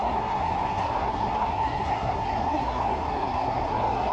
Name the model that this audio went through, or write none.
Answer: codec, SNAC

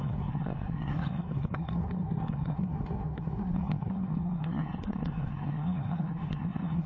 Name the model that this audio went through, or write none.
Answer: codec, SNAC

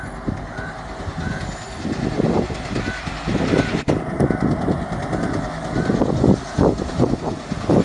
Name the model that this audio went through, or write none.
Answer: none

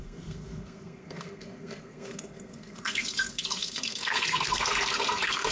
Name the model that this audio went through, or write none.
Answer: codec, SNAC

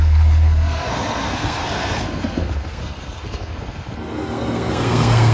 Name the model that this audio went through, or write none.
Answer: codec, SNAC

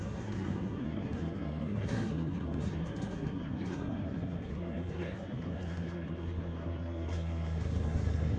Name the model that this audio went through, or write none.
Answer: codec, SNAC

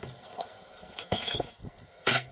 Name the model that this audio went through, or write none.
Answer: codec, SNAC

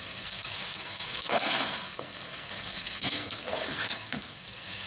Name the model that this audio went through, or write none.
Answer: codec, SNAC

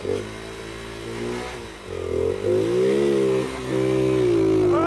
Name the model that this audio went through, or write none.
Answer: none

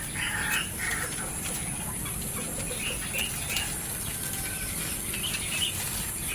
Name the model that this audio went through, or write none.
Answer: none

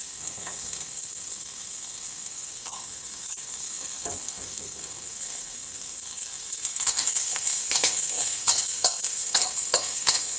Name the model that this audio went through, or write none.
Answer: codec, SNAC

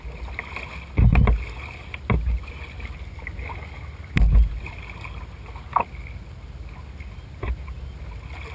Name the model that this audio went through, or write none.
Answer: none